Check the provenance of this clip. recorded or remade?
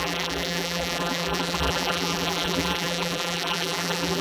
remade